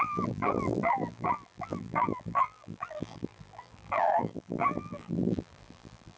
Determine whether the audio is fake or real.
fake